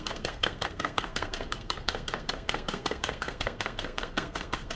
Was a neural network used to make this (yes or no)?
yes